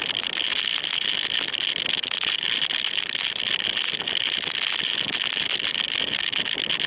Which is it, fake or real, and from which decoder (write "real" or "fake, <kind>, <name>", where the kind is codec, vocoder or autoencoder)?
real